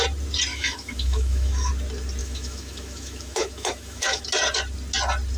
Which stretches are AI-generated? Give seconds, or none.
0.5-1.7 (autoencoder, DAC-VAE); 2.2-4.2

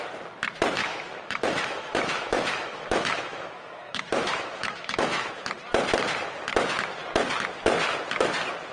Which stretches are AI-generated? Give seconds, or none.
0.8-5.3 (autoencoder, DAC-VAE)

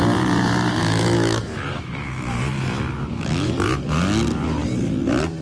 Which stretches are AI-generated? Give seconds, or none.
0.8-3.5 (autoencoder, DAC-VAE)

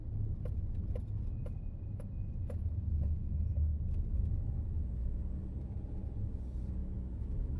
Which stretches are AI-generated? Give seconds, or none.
6.8-7.6 (autoencoder, DAC-VAE)

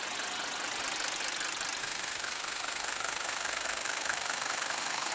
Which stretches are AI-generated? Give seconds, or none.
1.8-5.1 (autoencoder, DAC-VAE)

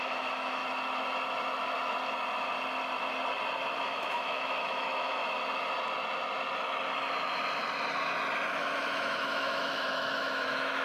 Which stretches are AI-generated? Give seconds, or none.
0.0-0.6 (autoencoder, DAC-VAE); 3.8-5.2; 8.5-10.8

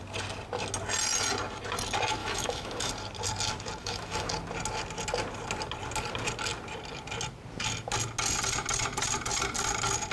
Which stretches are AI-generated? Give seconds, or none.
2.2-2.9 (autoencoder, DAC-VAE); 3.8-4.3

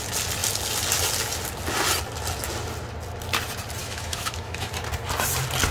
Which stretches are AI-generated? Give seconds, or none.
3.8-4.7 (autoencoder, DAC-VAE)